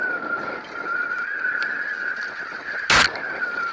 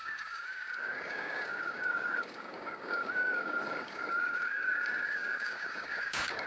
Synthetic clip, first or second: second